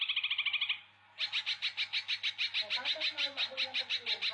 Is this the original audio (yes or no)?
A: yes